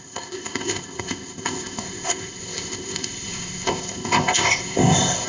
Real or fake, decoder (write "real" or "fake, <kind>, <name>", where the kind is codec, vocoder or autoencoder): fake, codec, ZipCodec